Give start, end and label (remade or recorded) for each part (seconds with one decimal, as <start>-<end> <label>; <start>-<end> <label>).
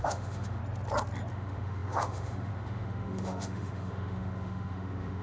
0.0-0.6 remade; 0.6-1.3 recorded; 1.3-5.2 remade